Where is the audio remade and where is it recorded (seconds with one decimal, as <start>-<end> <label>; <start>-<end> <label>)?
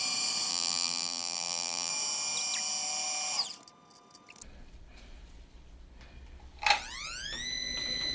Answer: 0.0-0.5 recorded; 0.5-1.9 remade; 1.9-8.1 recorded